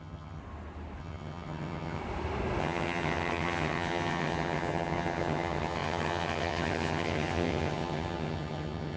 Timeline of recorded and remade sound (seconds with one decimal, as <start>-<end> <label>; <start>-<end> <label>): 0.0-0.4 remade; 0.4-1.0 recorded; 1.0-2.0 remade; 2.0-2.6 recorded; 2.6-9.0 remade